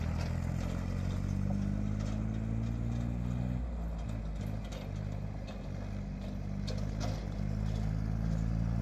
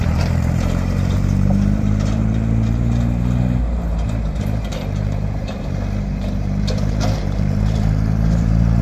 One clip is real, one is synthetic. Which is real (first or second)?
first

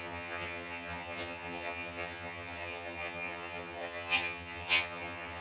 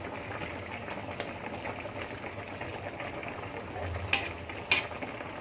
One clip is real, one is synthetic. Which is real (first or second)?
second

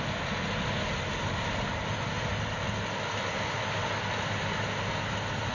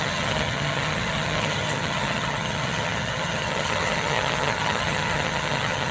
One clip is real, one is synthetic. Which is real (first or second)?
first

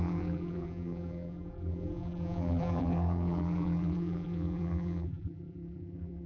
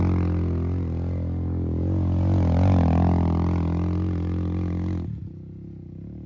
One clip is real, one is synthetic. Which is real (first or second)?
second